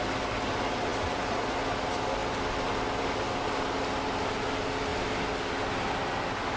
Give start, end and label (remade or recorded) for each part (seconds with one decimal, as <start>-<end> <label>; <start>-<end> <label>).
0.0-0.9 recorded; 0.9-1.4 remade; 1.4-6.6 recorded